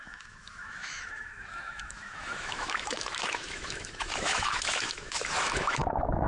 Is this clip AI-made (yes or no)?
yes